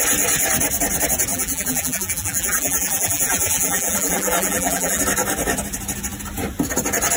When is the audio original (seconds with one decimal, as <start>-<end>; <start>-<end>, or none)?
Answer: 0.0-1.3; 5.0-7.2

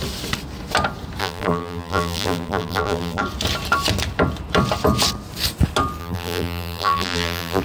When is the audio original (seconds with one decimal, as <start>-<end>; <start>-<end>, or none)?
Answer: 0.0-1.2; 3.2-6.0

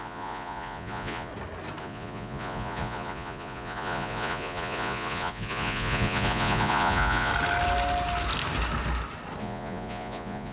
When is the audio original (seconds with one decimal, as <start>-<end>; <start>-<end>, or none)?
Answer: 1.3-1.8; 7.3-9.4

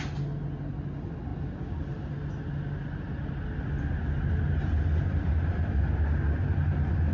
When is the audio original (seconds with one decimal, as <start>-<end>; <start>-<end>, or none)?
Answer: 0.0-7.1

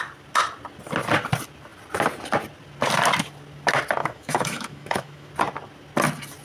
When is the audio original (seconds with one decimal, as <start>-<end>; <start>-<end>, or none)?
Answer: 0.0-4.0; 5.3-6.4

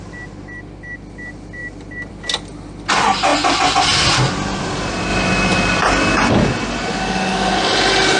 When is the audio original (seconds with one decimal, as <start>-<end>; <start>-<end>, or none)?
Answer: 0.0-8.2